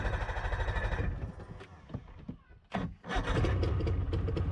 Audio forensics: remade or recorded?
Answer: recorded